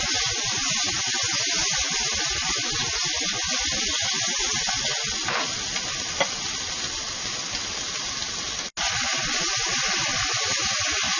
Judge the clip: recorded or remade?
recorded